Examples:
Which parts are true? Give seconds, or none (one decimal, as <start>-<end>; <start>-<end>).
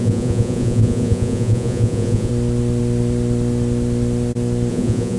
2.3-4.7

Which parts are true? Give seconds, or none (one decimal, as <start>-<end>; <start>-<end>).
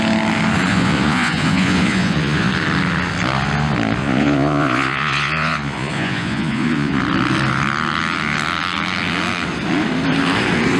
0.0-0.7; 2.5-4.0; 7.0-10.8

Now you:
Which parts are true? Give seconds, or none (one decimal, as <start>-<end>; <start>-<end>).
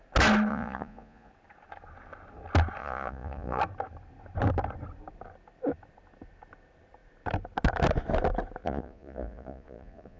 0.0-0.5; 1.3-2.8; 3.6-8.6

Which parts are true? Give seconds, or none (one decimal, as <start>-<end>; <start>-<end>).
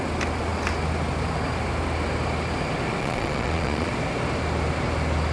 0.0-3.0; 3.9-5.3